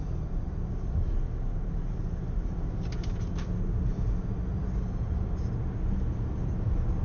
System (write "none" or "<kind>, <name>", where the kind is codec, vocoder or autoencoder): none